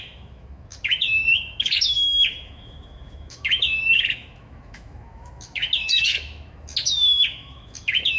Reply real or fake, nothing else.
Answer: fake